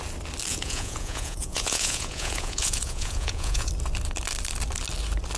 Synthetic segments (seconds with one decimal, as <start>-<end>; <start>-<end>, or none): 0.5-3.7

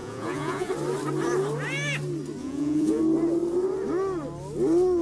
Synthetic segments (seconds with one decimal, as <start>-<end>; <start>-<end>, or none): 0.0-0.7; 2.4-3.0

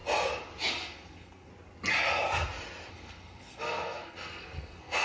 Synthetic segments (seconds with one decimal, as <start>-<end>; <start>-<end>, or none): 0.7-1.5; 2.9-5.0

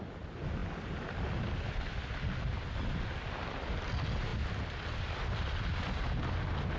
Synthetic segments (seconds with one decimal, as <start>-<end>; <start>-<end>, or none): none

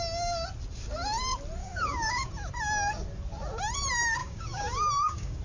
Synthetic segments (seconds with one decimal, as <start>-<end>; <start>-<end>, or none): 1.6-2.3; 4.2-5.4

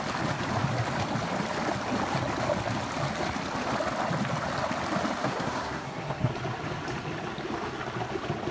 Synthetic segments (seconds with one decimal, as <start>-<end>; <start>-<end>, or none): 5.2-6.3

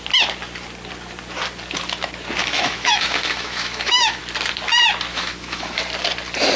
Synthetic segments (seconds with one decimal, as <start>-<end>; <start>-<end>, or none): 2.4-4.2; 5.1-5.8